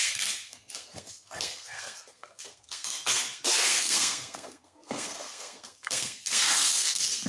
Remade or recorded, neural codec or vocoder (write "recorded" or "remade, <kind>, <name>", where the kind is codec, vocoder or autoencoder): remade, codec, SNAC